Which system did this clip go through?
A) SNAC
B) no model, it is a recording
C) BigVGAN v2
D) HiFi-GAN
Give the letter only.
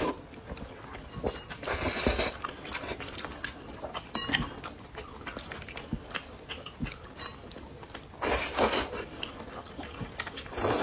B